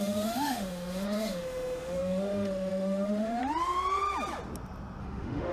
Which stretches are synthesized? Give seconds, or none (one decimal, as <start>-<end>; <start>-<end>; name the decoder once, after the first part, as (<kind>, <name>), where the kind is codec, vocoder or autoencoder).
0.0-3.4 (autoencoder, DAC-VAE); 5.0-5.5